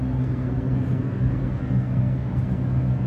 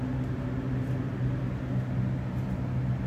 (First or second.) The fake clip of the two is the first